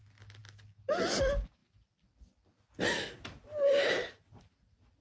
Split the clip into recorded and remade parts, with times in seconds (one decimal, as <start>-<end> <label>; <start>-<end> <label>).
0.0-5.0 recorded